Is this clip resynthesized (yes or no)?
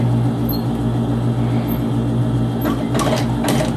no